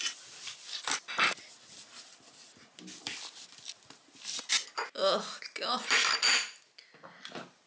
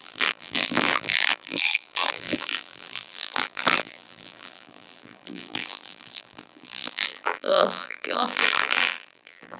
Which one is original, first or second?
first